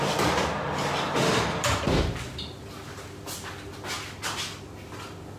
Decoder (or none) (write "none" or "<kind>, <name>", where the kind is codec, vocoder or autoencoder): none